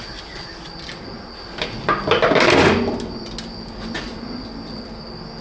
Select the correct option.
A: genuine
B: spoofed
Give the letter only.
A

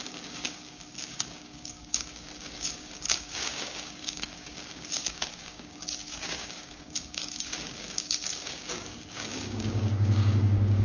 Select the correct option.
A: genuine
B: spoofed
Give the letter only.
B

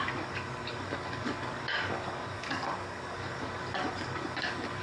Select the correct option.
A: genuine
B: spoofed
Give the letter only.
B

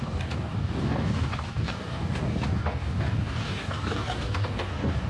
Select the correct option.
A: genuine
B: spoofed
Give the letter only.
B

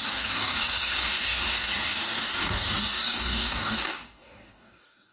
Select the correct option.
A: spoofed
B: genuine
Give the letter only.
A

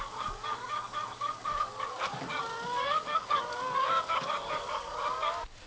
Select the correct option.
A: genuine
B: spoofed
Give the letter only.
B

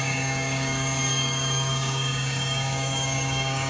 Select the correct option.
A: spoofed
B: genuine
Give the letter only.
A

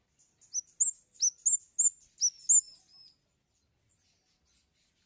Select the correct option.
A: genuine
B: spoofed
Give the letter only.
A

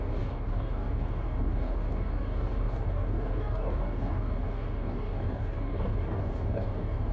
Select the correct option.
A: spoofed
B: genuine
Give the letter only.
A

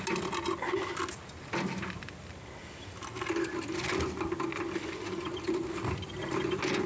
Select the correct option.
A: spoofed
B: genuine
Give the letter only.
B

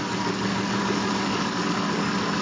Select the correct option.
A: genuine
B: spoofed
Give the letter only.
B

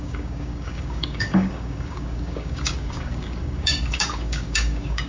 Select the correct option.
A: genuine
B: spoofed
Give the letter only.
B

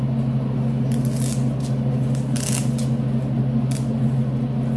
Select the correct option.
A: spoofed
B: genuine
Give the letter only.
B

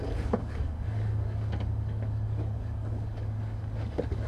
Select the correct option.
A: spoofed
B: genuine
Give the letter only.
A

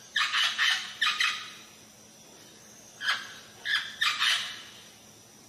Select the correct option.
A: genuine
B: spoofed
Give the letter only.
A